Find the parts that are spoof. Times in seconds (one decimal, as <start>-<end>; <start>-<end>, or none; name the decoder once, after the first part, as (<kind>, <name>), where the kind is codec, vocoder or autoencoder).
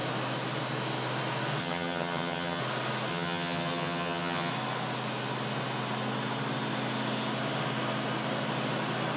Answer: 1.6-2.6 (vocoder, HiFi-GAN); 3.1-4.5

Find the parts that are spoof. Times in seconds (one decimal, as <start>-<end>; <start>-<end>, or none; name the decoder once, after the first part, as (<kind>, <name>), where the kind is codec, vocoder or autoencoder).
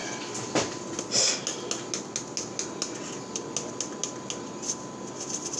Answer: none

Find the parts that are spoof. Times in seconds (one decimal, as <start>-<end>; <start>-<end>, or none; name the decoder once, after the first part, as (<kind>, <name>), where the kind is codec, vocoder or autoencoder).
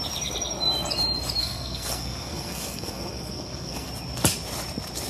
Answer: 1.4-3.9 (codec, SNAC)